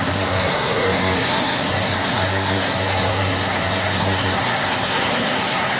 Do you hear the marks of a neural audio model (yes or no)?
yes